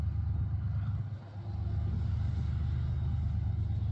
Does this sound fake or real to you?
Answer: real